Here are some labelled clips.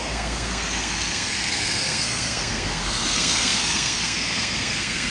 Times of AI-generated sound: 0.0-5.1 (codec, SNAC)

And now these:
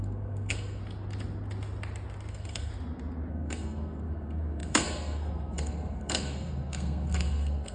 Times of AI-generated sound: 0.0-0.8 (codec, SNAC); 2.3-2.7; 3.3-7.7

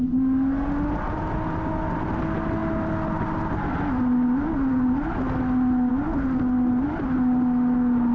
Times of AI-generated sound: none